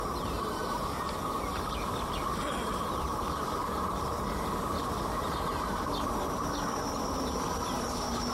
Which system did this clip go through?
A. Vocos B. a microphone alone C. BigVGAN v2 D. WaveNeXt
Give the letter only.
B